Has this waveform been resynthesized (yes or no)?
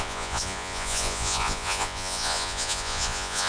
yes